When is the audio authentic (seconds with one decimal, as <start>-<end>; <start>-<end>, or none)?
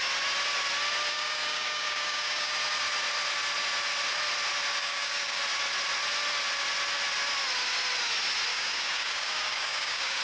0.0-1.1; 2.5-4.8; 5.4-8.5